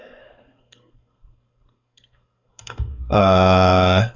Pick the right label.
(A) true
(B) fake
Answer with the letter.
B